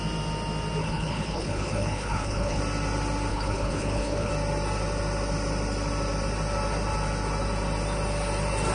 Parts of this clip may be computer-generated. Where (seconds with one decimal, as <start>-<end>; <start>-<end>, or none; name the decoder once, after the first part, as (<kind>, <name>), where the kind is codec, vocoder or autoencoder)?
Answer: 0.8-2.6 (codec, HILCodec); 3.3-4.3